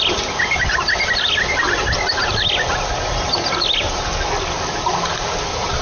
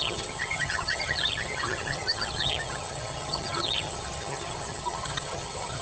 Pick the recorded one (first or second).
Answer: first